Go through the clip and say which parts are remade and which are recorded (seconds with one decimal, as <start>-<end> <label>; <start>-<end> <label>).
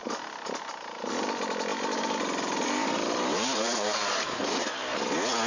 0.0-1.7 recorded; 1.7-5.0 remade; 5.0-5.5 recorded